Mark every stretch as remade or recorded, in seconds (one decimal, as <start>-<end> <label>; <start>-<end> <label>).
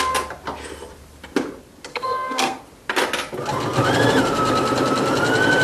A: 0.0-1.9 recorded; 1.9-2.6 remade; 2.6-5.6 recorded